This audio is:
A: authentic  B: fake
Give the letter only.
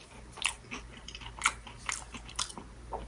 A